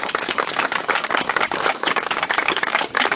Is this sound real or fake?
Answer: fake